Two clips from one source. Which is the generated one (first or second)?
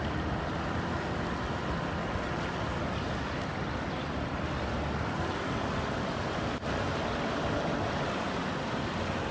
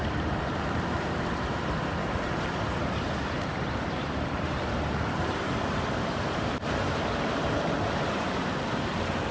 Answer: second